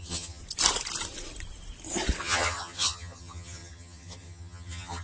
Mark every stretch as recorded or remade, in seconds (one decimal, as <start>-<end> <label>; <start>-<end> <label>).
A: 0.0-0.4 remade; 0.4-2.2 recorded; 2.2-5.0 remade